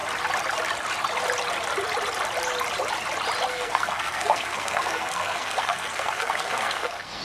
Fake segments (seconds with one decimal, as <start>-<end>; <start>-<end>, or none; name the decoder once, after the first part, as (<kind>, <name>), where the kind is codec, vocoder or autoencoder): 3.5-7.2 (codec, SNAC)